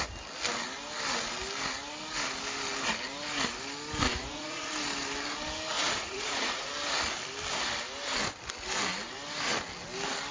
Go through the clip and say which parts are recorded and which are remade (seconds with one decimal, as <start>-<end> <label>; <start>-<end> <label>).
0.0-4.1 recorded; 4.1-4.7 remade; 4.7-5.7 recorded; 5.7-6.7 remade; 6.7-10.3 recorded